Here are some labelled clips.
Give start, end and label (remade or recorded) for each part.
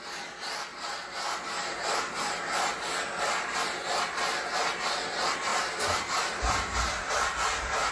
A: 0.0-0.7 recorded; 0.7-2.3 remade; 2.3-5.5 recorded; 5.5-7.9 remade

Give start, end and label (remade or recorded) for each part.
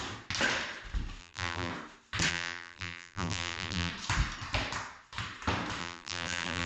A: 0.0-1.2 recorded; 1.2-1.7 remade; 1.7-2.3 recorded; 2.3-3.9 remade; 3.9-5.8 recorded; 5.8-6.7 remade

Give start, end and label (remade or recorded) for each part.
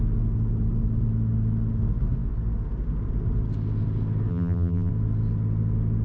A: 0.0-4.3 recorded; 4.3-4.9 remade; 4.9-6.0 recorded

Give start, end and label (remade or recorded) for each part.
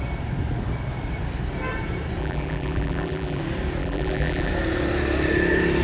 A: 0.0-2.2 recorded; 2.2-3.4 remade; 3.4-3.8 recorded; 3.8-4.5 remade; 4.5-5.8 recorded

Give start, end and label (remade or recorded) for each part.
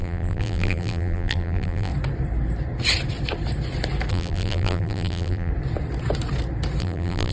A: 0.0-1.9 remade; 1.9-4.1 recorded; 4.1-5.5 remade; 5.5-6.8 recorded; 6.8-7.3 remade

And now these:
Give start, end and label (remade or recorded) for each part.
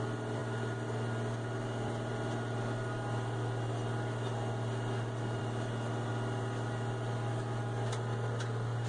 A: 0.0-8.9 recorded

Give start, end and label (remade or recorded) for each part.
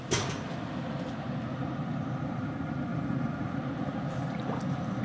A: 0.0-1.5 recorded; 1.5-2.5 remade; 2.5-2.9 recorded; 2.9-5.0 remade